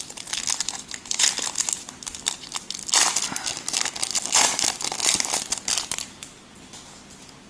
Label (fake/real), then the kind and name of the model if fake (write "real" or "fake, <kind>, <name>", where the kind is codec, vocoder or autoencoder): real